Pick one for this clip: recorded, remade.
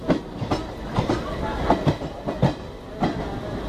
recorded